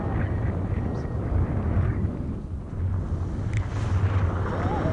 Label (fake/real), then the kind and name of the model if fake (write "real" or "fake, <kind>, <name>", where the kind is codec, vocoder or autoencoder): real